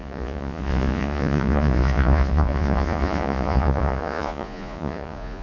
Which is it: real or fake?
fake